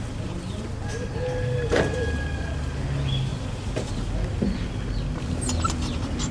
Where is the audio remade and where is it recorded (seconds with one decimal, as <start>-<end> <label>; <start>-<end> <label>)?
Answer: 0.0-3.3 recorded; 3.3-3.9 remade; 3.9-6.3 recorded